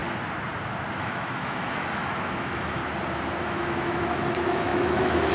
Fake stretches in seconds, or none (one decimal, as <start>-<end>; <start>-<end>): 0.9-2.8; 3.4-5.3